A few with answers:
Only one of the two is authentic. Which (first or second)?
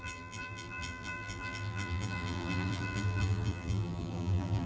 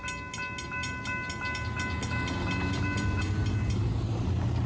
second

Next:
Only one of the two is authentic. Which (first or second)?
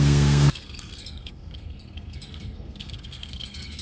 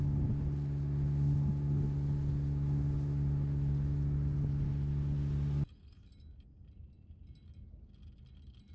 second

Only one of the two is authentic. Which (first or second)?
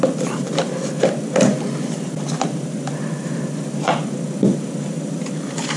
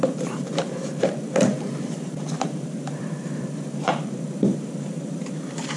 first